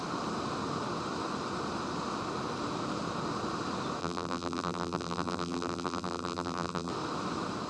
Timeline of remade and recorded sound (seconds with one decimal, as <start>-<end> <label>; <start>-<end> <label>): 0.0-4.0 recorded; 4.0-6.9 remade; 6.9-7.7 recorded